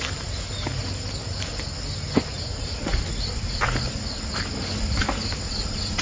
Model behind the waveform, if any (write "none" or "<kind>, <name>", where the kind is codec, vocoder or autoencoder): none